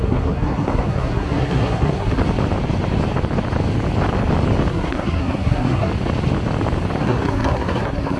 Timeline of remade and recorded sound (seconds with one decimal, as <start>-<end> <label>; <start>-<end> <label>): 0.0-2.2 remade; 2.2-4.7 recorded; 4.7-5.9 remade; 5.9-7.0 recorded; 7.0-8.2 remade